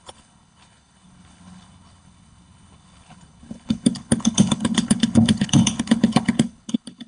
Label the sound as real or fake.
fake